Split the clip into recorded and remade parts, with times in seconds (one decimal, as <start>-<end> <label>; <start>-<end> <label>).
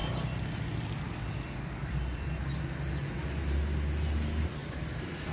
0.0-1.8 recorded; 1.8-2.4 remade; 2.4-4.6 recorded; 4.6-5.3 remade